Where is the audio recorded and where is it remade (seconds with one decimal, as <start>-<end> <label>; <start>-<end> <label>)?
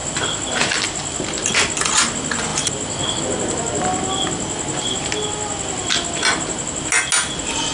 0.0-7.7 recorded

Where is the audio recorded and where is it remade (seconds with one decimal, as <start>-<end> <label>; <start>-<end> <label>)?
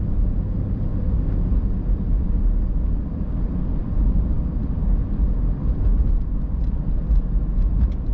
0.0-0.9 remade; 0.9-3.4 recorded; 3.4-3.8 remade; 3.8-6.6 recorded; 6.6-8.1 remade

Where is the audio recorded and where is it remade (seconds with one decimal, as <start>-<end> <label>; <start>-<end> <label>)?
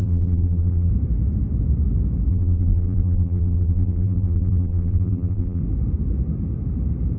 0.0-0.9 remade; 0.9-2.3 recorded; 2.3-5.6 remade; 5.6-7.2 recorded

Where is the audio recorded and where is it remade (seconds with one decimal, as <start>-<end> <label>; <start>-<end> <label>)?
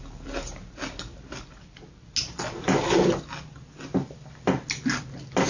0.0-5.5 recorded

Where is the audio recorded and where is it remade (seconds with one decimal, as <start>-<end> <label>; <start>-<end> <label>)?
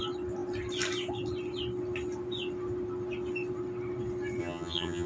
0.0-4.4 recorded; 4.4-5.1 remade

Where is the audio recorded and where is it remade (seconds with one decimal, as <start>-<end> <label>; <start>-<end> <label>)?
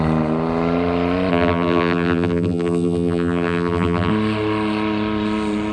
0.0-1.3 recorded; 1.3-4.1 remade; 4.1-5.7 recorded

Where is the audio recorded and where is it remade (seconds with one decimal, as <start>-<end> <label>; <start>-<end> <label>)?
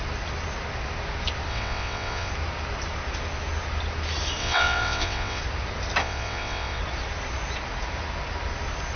0.0-1.5 recorded; 1.5-2.3 remade; 2.3-4.4 recorded; 4.4-5.4 remade; 5.4-6.0 recorded; 6.0-6.8 remade; 6.8-9.0 recorded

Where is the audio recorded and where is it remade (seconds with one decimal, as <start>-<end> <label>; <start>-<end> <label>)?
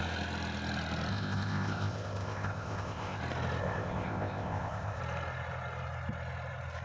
0.0-1.1 recorded; 1.1-3.2 remade; 3.2-3.6 recorded; 3.6-5.0 remade; 5.0-6.8 recorded